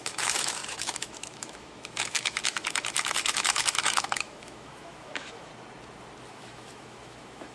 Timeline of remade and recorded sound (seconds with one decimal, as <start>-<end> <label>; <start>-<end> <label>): 0.0-5.5 remade; 5.5-6.3 recorded; 6.3-7.5 remade